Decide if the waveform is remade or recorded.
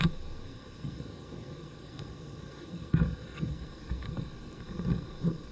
remade